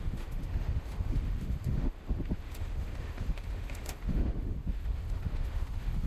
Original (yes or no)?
no